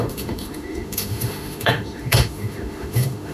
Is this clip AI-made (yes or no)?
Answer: yes